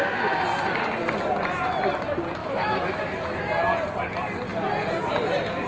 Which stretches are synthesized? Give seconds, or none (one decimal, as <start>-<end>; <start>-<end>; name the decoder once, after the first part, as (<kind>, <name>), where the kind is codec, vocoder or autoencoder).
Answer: 2.4-3.5 (autoencoder, DAC-VAE)